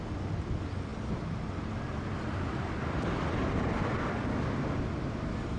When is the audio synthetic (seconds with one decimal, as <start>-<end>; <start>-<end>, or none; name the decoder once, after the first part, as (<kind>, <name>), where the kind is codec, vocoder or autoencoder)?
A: none